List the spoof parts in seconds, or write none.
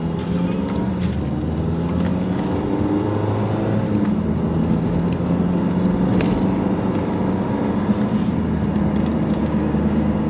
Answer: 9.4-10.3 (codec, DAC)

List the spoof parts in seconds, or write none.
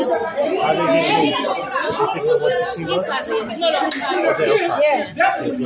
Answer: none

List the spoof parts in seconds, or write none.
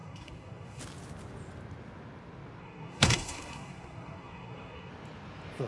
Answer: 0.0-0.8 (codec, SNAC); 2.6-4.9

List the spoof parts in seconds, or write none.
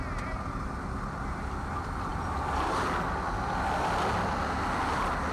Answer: none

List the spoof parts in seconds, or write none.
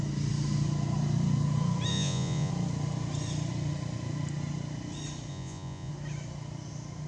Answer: 1.9-2.5 (vocoder, Vocos); 5.3-5.9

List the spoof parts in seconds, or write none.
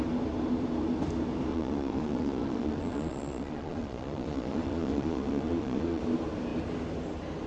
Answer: 1.5-6.0 (vocoder, Vocos)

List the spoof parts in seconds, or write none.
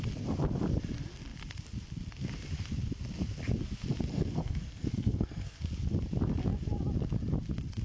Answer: 4.1-5.6 (codec, SNAC)